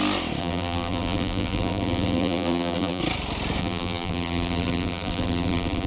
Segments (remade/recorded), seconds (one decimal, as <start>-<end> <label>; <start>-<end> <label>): 0.0-0.4 recorded; 0.4-3.0 remade; 3.0-3.6 recorded; 3.6-5.9 remade